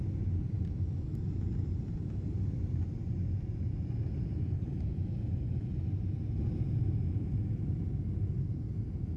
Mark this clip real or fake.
real